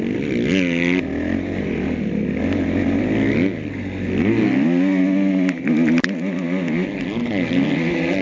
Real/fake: real